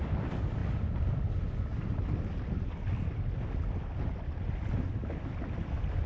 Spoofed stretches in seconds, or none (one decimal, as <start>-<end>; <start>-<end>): none